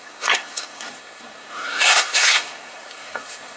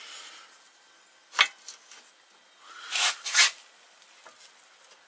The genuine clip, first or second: second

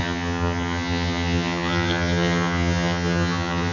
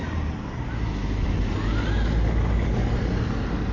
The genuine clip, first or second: second